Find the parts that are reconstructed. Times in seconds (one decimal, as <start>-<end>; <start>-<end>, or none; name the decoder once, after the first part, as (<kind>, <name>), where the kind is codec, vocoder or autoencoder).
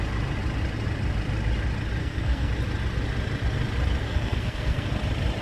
2.0-2.5 (codec, SNAC); 4.0-4.9